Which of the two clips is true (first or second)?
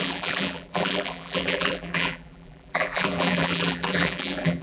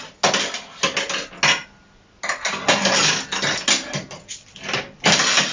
second